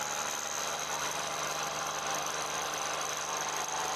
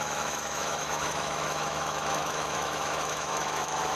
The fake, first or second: second